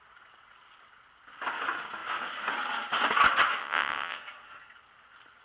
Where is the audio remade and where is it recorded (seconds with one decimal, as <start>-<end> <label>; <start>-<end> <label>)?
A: 0.0-3.6 recorded; 3.6-4.2 remade; 4.2-5.4 recorded